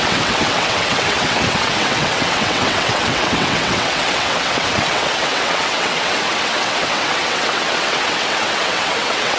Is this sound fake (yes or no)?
yes